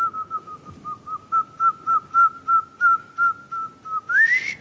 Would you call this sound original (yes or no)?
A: yes